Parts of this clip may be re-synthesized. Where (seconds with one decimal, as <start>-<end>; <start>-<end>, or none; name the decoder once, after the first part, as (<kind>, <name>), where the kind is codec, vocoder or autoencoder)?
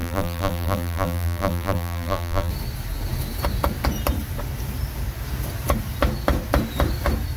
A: 0.0-2.5 (vocoder, BigVGAN v2)